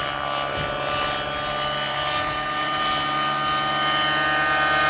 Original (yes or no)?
yes